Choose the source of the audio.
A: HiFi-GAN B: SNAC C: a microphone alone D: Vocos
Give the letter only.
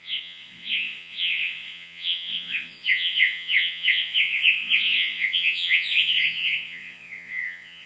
D